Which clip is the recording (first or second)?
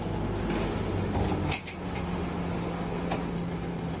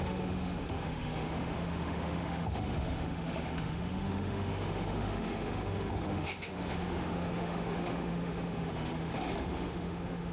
first